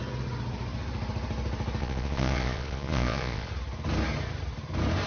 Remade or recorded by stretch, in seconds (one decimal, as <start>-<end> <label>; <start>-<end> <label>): 0.0-1.8 recorded; 1.8-3.5 remade; 3.5-5.1 recorded